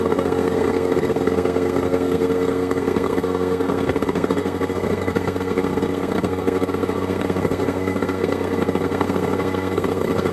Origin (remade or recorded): remade